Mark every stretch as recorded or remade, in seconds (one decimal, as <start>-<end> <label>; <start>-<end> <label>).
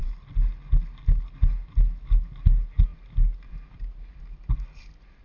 0.0-5.2 recorded